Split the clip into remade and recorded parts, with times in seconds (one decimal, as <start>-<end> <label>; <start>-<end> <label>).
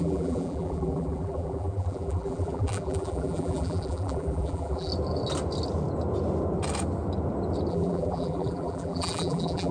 0.0-4.9 remade; 4.9-7.7 recorded; 7.7-9.7 remade